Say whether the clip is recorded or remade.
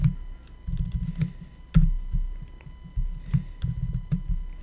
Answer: recorded